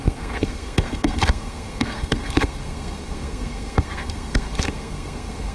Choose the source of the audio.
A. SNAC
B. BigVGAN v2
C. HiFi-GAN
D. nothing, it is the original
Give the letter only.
A